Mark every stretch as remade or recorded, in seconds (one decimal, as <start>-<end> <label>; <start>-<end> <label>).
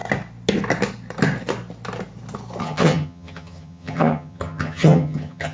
0.0-2.6 recorded; 2.6-5.5 remade